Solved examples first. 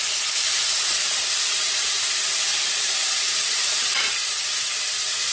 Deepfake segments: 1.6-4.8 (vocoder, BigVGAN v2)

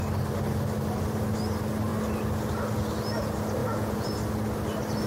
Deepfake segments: 3.6-4.1 (vocoder, Vocos)

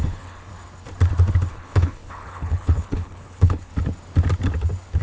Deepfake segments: 0.0-0.5 (codec, HILCodec); 1.5-3.7

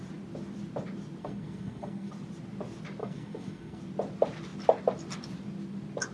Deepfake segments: 1.2-2.1 (codec, SNAC); 3.0-3.8